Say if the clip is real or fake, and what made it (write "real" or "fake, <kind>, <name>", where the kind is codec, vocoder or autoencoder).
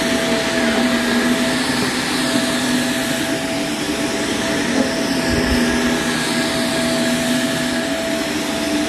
real